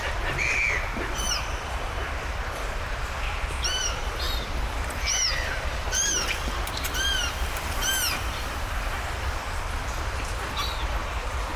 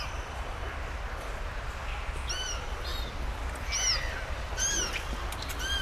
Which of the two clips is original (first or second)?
second